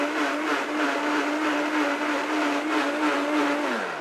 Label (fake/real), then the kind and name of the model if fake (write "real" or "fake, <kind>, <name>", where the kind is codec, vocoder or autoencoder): real